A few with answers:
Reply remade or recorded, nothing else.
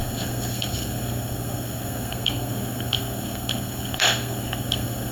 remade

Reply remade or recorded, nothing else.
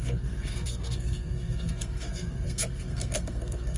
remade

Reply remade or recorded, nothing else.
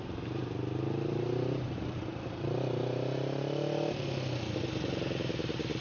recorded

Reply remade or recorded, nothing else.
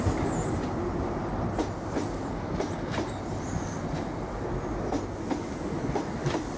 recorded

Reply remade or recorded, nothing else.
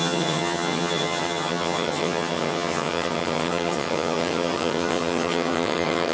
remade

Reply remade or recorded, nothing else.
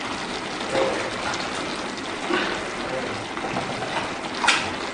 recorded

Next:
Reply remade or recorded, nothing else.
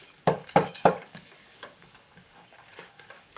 remade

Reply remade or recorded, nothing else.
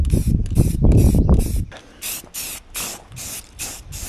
recorded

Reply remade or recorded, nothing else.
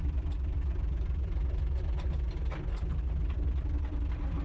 recorded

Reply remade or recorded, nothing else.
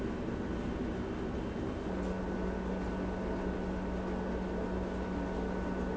recorded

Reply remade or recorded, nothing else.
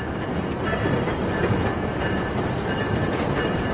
recorded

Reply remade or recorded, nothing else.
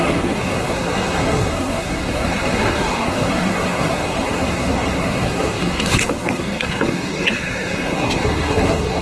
remade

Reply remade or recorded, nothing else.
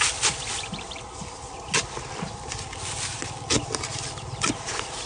recorded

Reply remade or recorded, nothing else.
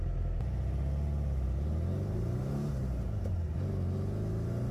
recorded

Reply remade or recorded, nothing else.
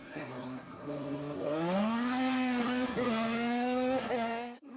remade